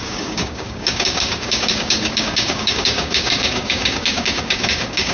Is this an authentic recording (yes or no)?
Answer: no